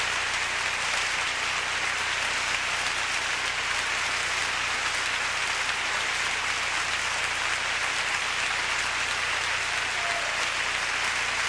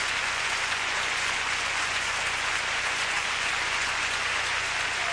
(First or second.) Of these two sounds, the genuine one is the first